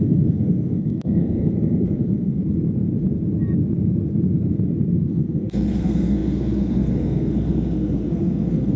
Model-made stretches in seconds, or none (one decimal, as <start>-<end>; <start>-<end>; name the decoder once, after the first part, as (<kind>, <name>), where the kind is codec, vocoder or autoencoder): 0.0-2.4 (codec, SNAC); 5.1-8.8